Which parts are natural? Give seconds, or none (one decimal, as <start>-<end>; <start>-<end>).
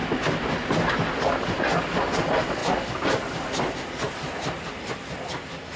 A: 0.0-5.8